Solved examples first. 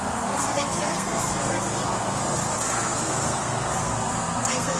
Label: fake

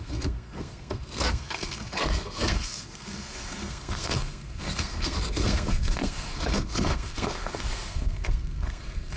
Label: fake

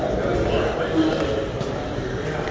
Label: real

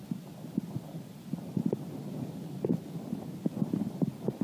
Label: real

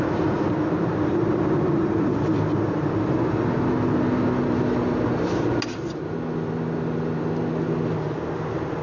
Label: real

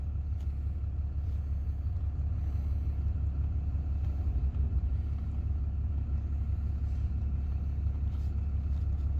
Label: real